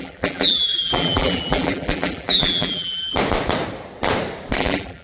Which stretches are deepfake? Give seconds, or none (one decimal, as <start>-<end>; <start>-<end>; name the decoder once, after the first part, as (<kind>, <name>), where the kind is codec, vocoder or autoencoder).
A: 0.0-3.1 (vocoder, BigVGAN v2); 4.6-5.0